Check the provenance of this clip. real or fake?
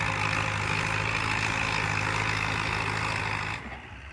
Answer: real